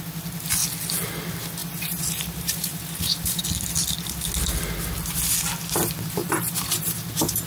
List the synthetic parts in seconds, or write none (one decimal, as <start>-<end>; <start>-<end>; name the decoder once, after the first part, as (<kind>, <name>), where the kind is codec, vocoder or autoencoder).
1.6-3.5 (vocoder, BigVGAN v2); 6.2-7.5

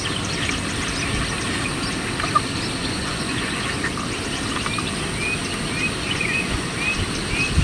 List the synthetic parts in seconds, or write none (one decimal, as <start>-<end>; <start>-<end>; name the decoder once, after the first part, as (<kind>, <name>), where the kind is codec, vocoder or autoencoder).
2.8-3.6 (vocoder, Vocos); 6.1-6.7